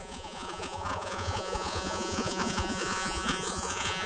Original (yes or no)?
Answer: no